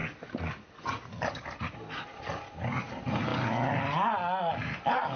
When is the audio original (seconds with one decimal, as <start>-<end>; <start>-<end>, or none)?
0.0-5.2